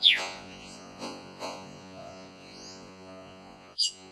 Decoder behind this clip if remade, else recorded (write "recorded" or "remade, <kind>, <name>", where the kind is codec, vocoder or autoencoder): remade, vocoder, Vocos